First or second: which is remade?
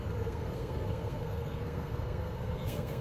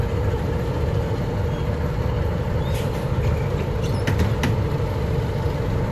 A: first